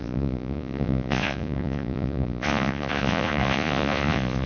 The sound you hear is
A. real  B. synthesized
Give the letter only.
B